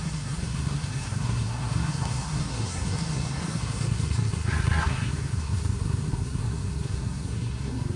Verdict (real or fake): fake